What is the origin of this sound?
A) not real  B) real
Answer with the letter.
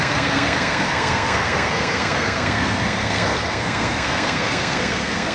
A